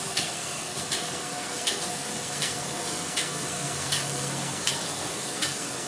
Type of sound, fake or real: fake